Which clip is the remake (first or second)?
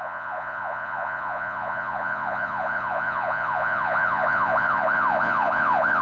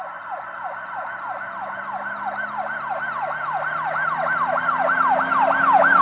first